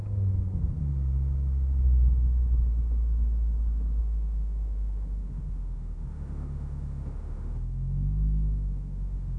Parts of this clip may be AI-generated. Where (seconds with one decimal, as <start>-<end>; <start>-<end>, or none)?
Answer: 4.0-9.4